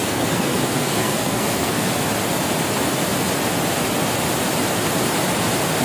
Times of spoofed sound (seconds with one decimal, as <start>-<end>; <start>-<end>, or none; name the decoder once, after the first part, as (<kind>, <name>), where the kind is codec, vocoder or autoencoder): 0.0-1.9 (codec, SNAC)